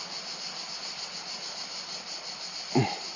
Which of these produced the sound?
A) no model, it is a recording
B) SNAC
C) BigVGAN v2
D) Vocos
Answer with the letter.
A